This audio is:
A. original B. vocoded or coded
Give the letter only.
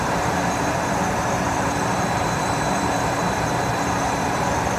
B